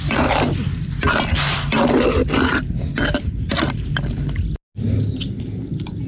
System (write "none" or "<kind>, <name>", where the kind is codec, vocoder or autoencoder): none